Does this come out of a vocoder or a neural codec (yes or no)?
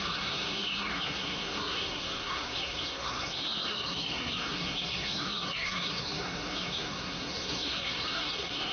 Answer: yes